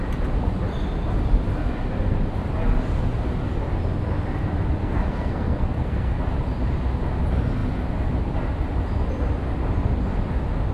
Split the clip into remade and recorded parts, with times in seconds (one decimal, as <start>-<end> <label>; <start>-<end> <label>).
0.0-4.8 recorded; 4.8-6.2 remade; 6.2-10.7 recorded